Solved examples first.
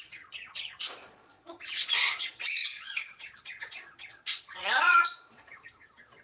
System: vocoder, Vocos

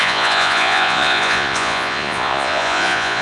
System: vocoder, Vocos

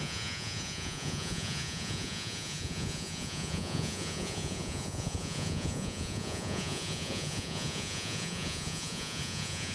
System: vocoder, Vocos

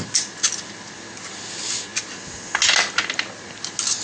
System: none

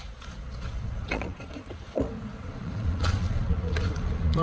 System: vocoder, Vocos